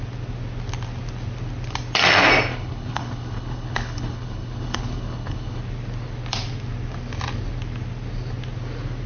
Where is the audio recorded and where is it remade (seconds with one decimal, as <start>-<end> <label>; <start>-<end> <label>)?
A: 0.0-2.5 recorded; 2.5-5.6 remade; 5.6-9.1 recorded